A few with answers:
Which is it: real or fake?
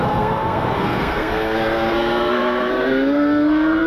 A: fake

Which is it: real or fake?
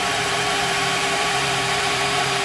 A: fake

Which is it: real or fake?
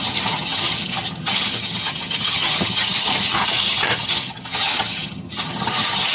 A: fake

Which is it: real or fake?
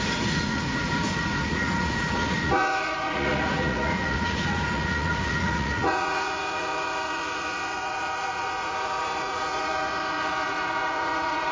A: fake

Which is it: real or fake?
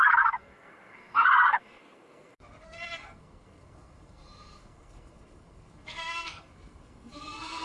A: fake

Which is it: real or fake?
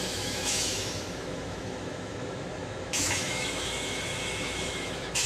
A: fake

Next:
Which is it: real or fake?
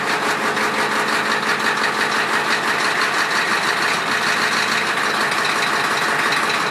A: real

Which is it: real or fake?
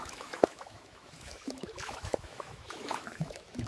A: fake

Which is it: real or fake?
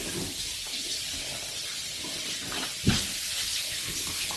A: real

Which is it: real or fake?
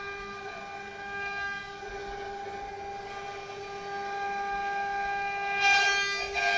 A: real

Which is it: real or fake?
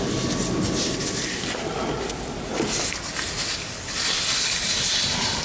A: real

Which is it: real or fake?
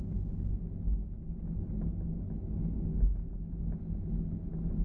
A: real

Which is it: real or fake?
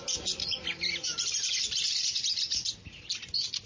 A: real